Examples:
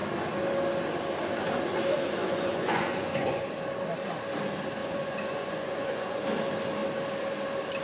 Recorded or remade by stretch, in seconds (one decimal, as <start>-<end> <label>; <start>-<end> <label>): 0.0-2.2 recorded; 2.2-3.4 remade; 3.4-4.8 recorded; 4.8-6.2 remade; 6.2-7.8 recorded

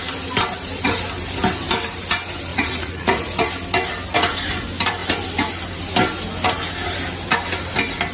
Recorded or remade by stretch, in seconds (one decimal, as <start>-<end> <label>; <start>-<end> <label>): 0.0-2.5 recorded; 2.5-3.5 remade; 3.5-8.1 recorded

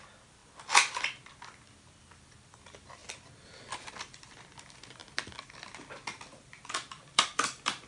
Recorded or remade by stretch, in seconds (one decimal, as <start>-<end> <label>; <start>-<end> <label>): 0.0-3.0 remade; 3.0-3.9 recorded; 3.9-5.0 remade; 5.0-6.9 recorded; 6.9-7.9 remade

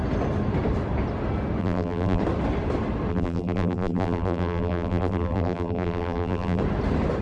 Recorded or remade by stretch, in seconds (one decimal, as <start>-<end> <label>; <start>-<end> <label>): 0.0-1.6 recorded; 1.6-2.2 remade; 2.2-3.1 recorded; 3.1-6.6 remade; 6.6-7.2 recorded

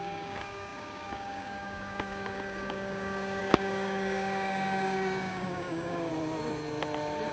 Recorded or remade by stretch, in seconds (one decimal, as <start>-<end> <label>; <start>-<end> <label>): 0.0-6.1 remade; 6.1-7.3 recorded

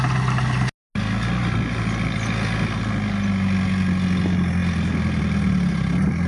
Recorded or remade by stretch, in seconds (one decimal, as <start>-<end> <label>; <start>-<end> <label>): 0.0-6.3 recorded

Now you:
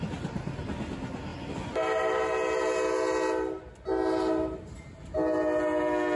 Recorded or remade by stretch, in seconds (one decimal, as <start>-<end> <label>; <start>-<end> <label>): 0.0-6.2 recorded